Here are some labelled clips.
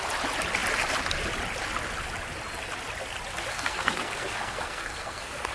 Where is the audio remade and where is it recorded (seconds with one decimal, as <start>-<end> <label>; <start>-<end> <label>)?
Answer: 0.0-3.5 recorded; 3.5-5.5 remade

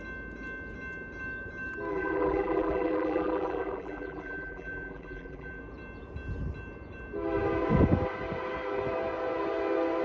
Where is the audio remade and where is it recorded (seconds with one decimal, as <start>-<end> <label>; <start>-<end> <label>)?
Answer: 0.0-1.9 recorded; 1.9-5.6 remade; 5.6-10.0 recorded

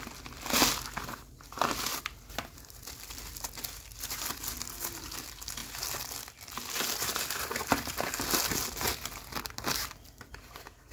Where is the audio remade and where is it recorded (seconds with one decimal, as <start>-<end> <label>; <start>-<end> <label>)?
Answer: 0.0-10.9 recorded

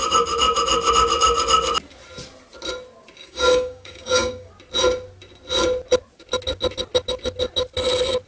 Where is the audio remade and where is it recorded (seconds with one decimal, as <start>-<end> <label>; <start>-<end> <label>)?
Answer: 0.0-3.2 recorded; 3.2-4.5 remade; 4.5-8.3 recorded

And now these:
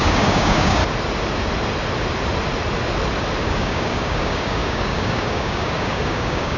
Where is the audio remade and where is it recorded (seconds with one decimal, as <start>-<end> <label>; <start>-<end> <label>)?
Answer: 0.0-0.8 remade; 0.8-3.4 recorded; 3.4-6.6 remade

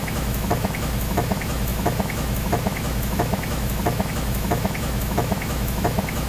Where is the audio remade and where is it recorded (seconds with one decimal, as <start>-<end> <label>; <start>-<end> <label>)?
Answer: 0.0-6.3 remade